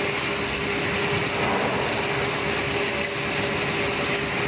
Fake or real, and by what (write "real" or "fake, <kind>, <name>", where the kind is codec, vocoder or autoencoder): real